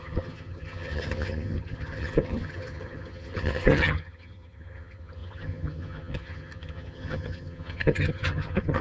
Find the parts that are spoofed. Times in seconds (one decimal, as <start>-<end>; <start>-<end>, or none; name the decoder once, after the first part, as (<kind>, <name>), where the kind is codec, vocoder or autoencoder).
0.0-8.8 (vocoder, HiFi-GAN)